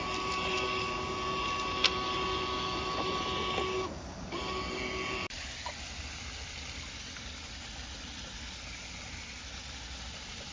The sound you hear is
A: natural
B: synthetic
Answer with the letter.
A